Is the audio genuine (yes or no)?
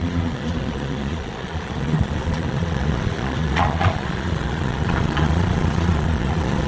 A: no